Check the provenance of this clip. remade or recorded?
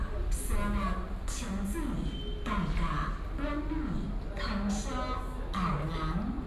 recorded